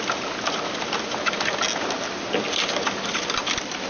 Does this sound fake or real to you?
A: real